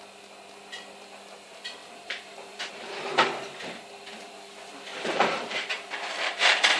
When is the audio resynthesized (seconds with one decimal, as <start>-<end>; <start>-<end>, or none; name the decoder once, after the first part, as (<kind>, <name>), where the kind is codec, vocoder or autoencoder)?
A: 1.8-2.7 (vocoder, BigVGAN v2); 4.9-6.8